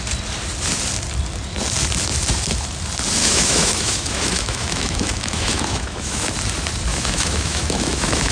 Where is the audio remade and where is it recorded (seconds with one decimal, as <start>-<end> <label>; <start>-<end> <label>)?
0.0-3.2 recorded; 3.2-6.3 remade; 6.3-6.9 recorded; 6.9-8.3 remade